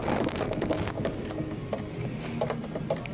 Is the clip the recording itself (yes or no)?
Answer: yes